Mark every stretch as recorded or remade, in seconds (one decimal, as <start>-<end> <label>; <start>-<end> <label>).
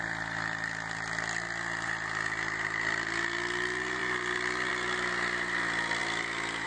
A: 0.0-6.7 recorded